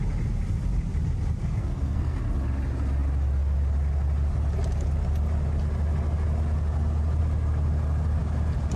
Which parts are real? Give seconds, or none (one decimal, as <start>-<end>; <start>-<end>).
0.0-1.4; 2.2-8.8